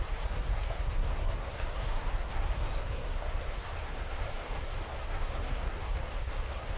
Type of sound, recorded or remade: remade